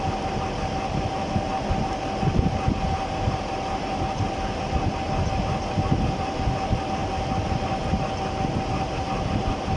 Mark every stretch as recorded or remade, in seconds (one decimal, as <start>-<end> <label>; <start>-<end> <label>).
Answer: 0.0-9.8 recorded

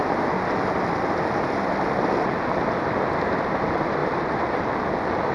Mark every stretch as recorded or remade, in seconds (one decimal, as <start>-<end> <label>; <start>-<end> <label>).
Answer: 0.0-5.3 recorded

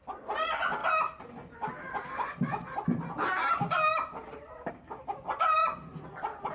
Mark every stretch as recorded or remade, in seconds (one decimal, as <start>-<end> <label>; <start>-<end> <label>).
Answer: 0.0-6.5 recorded

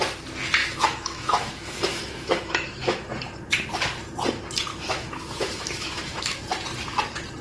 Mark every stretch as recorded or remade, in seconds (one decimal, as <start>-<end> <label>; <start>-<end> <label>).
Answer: 0.0-0.6 recorded; 0.6-3.1 remade; 3.1-4.7 recorded; 4.7-6.4 remade; 6.4-7.4 recorded

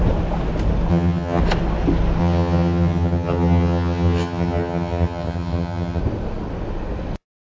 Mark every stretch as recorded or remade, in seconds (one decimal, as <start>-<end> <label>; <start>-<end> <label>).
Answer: 0.0-0.9 recorded; 0.9-1.4 remade; 1.4-2.2 recorded; 2.2-6.0 remade; 6.0-7.5 recorded

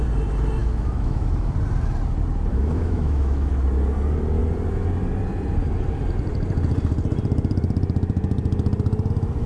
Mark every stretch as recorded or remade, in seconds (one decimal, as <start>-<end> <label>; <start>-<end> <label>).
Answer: 0.0-0.6 recorded; 0.6-1.5 remade; 1.5-2.5 recorded; 2.5-3.5 remade; 3.5-9.5 recorded

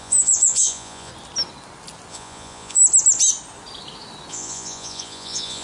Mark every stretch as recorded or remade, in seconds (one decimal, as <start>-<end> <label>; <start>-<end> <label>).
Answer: 0.0-1.1 remade; 1.1-2.1 recorded; 2.1-2.8 remade; 2.8-4.3 recorded; 4.3-5.6 remade

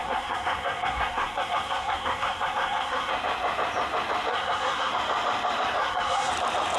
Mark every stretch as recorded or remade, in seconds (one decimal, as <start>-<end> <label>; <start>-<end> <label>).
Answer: 0.0-3.1 remade; 3.1-4.3 recorded; 4.3-4.9 remade; 4.9-5.8 recorded; 5.8-6.3 remade; 6.3-6.8 recorded